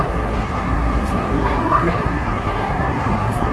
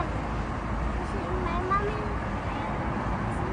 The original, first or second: second